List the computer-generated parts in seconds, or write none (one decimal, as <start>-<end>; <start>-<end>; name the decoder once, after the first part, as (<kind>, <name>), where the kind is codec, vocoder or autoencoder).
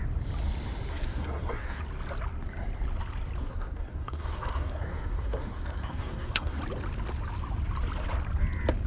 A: 0.9-1.8 (codec, SNAC); 3.4-6.6